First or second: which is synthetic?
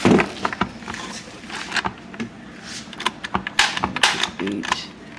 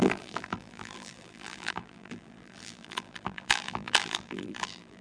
second